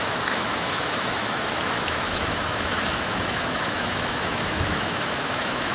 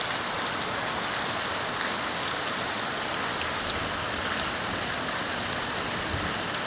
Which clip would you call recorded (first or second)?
second